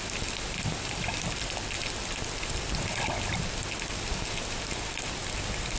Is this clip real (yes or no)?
yes